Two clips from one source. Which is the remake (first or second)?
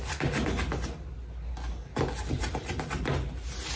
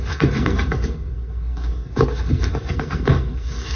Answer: second